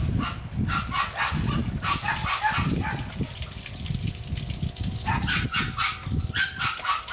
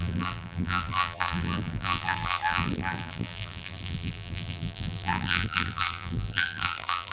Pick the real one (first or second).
first